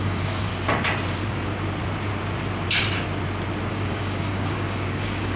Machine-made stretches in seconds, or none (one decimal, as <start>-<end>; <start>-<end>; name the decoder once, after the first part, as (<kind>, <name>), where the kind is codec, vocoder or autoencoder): 0.0-0.5 (codec, DAC); 3.7-5.4